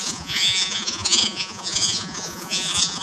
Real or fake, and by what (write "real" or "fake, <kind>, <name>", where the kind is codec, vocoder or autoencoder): fake, vocoder, Vocos